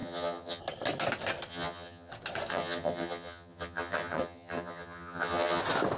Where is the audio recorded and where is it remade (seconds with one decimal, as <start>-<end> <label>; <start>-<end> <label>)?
0.0-0.6 remade; 0.6-1.5 recorded; 1.5-2.1 remade; 2.1-2.5 recorded; 2.5-5.6 remade; 5.6-6.0 recorded